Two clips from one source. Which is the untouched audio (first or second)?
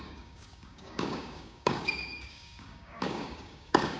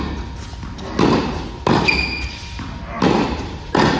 second